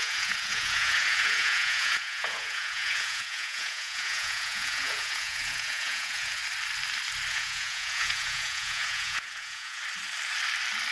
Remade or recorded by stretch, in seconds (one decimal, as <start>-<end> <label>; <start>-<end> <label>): 0.0-6.4 remade; 6.4-7.3 recorded; 7.3-9.8 remade; 9.8-10.9 recorded